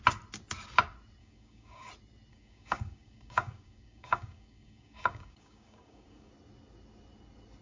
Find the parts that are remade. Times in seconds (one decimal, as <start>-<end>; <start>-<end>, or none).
1.2-1.9; 2.3-6.3

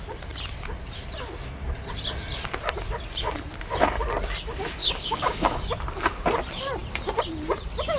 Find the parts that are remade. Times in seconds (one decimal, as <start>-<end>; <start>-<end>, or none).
4.8-5.7

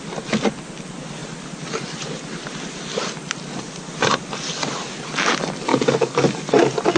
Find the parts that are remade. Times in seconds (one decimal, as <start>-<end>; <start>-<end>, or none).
5.7-6.4

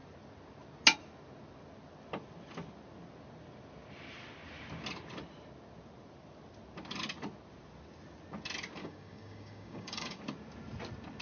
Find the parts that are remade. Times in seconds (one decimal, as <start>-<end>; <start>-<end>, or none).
8.8-10.2

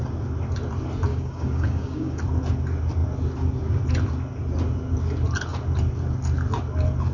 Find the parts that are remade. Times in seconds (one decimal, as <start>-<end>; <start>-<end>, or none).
1.1-2.2